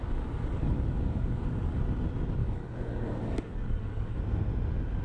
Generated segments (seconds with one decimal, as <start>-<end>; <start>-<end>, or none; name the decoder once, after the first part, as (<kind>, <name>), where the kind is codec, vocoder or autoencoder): 0.0-1.8 (codec, DAC); 2.4-4.2